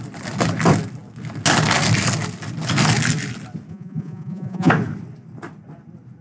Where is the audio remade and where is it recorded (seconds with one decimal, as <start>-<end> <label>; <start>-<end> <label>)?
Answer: 0.0-3.7 recorded; 3.7-4.7 remade; 4.7-6.2 recorded

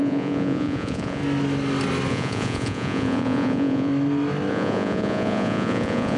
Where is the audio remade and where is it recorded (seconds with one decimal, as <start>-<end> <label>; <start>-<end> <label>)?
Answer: 0.0-1.2 remade; 1.2-2.1 recorded; 2.1-3.9 remade; 3.9-4.5 recorded; 4.5-6.2 remade

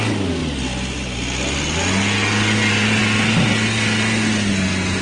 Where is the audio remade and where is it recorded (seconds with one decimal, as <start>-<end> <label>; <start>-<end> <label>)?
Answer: 0.0-5.0 recorded

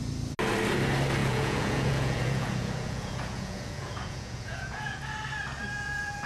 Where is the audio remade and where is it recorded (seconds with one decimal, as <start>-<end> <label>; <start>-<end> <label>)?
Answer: 0.0-1.2 recorded; 1.2-5.0 remade; 5.0-5.7 recorded; 5.7-6.3 remade

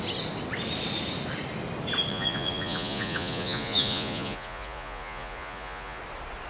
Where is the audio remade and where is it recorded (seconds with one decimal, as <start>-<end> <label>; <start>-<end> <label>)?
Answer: 0.0-2.1 recorded; 2.1-6.0 remade; 6.0-6.5 recorded

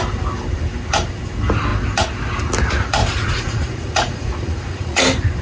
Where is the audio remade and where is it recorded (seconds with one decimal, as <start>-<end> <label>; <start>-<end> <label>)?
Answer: 0.0-3.0 recorded; 3.0-5.0 remade; 5.0-5.4 recorded